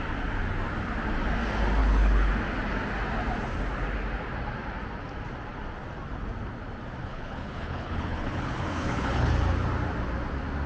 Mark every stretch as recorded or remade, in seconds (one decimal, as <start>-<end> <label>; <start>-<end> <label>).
0.0-1.8 recorded; 1.8-2.3 remade; 2.3-7.0 recorded; 7.0-9.3 remade; 9.3-10.7 recorded